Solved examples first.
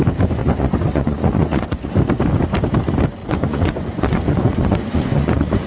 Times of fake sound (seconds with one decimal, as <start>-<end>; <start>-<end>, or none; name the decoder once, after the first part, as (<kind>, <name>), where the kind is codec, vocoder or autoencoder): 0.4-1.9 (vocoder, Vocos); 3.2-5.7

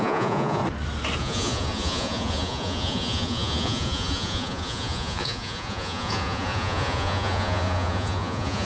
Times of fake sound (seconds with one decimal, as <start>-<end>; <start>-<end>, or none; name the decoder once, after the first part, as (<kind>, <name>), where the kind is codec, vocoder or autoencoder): 0.0-0.6 (vocoder, Vocos); 1.2-8.6

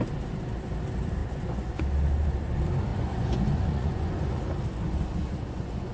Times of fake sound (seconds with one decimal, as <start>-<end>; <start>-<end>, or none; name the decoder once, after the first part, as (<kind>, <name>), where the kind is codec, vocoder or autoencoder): 1.2-1.8 (vocoder, Vocos); 2.9-4.4; 5.2-5.9

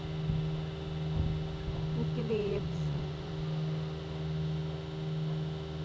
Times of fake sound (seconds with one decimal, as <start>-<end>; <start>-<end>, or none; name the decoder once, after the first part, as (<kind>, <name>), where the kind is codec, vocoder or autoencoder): 2.2-3.3 (vocoder, Vocos)

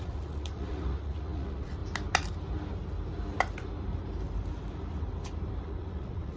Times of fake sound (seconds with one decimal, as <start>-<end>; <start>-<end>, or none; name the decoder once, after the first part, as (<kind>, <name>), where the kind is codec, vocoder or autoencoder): 0.0-1.8 (vocoder, Vocos); 5.6-6.4

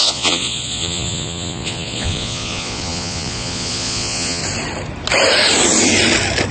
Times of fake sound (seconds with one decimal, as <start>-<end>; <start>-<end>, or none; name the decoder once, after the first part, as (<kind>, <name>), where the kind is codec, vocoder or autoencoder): 0.0-4.4 (vocoder, Vocos)

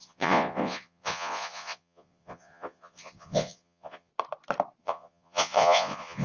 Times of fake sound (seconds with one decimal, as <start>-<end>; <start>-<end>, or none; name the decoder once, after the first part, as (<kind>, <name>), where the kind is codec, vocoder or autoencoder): 0.0-4.1 (vocoder, Vocos); 4.8-6.2